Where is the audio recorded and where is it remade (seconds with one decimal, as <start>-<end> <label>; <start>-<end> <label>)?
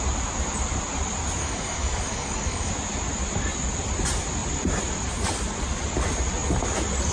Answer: 0.0-1.4 recorded; 1.4-2.7 remade; 2.7-7.1 recorded